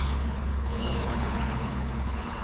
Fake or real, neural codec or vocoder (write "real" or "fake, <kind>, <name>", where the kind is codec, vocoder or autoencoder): fake, codec, HILCodec